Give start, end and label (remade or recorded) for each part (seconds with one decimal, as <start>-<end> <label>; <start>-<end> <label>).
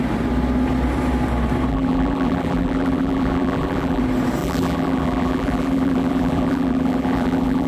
0.0-1.7 recorded; 1.7-4.0 remade; 4.0-4.4 recorded; 4.4-7.7 remade